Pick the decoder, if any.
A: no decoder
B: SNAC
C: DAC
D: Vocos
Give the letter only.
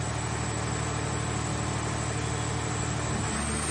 A